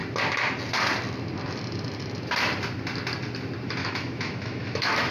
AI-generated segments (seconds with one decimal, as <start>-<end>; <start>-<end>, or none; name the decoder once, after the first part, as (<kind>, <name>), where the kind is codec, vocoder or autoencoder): 3.8-5.1 (autoencoder, DAC-VAE)